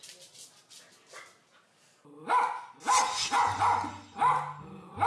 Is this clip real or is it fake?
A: real